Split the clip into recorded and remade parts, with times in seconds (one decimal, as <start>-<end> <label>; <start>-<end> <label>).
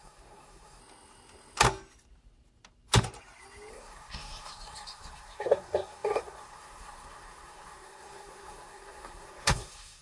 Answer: 0.0-0.8 remade; 0.8-3.7 recorded; 3.7-10.0 remade